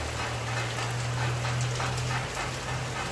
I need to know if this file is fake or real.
real